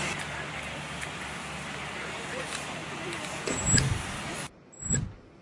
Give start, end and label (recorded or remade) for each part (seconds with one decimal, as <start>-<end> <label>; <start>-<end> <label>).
0.0-5.4 recorded